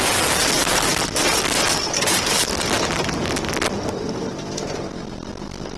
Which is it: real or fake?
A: real